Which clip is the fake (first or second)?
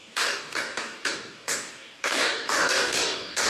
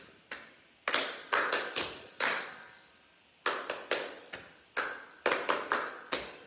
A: first